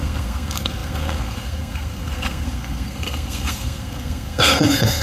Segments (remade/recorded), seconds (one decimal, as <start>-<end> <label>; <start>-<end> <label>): 0.0-5.0 remade